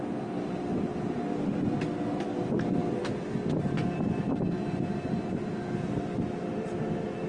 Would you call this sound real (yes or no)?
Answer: yes